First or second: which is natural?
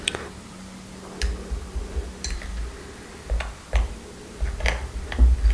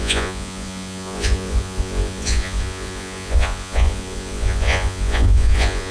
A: first